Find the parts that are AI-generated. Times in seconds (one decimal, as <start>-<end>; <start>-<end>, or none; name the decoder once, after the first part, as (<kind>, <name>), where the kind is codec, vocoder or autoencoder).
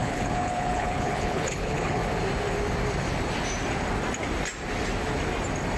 0.0-2.0 (codec, HILCodec)